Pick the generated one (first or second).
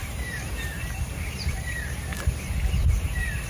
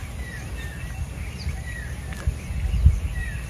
first